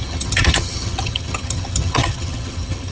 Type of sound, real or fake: fake